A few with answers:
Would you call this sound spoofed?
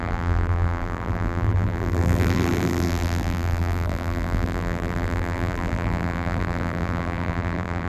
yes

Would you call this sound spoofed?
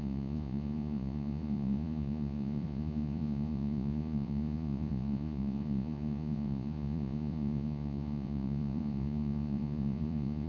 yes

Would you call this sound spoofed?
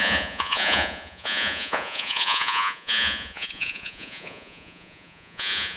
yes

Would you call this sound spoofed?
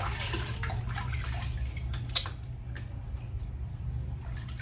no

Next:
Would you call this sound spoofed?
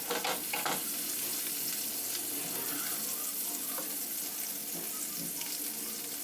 no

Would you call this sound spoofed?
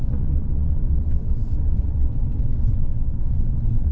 yes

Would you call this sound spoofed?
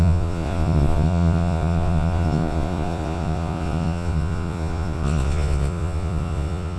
yes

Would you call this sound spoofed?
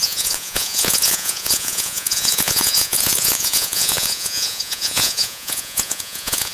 yes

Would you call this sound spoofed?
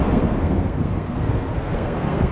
yes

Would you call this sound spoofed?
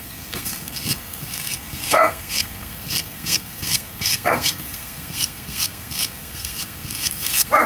yes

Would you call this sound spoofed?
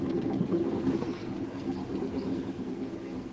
yes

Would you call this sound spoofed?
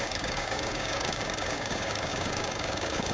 yes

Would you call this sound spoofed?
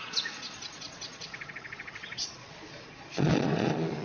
yes